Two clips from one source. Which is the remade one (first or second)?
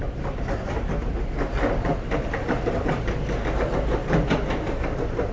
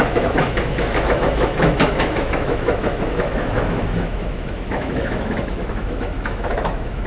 second